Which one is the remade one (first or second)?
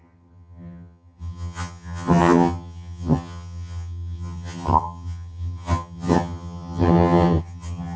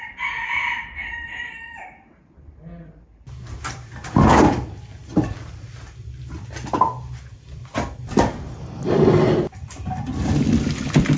first